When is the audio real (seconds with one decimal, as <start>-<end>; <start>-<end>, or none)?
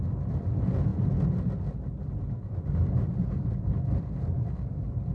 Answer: 0.0-5.1